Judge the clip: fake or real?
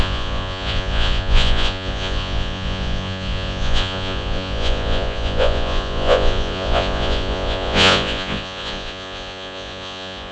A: fake